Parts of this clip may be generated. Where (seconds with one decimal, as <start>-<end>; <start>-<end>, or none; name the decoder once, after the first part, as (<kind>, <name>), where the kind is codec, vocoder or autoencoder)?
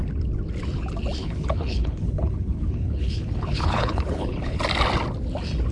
1.2-4.6 (codec, HILCodec)